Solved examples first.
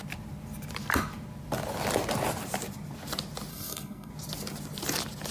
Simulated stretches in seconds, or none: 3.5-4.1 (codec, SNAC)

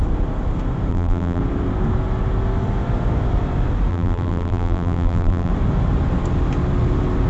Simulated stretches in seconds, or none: 0.9-1.4 (vocoder, BigVGAN v2); 3.9-5.5